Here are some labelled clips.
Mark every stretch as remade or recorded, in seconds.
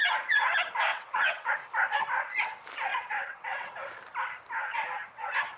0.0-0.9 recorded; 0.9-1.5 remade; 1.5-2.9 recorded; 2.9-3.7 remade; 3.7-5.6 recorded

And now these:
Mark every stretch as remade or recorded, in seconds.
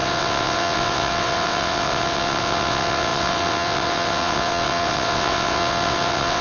0.0-6.4 remade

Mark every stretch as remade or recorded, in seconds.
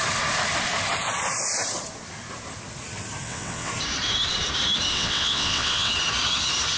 0.0-3.2 recorded; 3.2-3.7 remade; 3.7-4.9 recorded; 4.9-5.9 remade; 5.9-6.8 recorded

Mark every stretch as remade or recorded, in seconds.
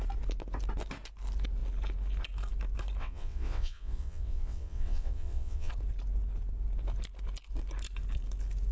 0.0-3.0 recorded; 3.0-5.7 remade; 5.7-8.7 recorded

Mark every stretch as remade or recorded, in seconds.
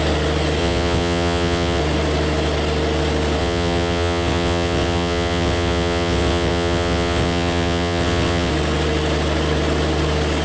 0.0-0.6 recorded; 0.6-1.8 remade; 1.8-3.4 recorded; 3.4-8.5 remade; 8.5-10.4 recorded